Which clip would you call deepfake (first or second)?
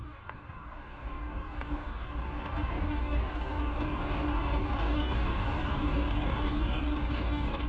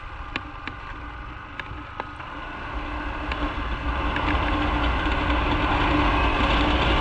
first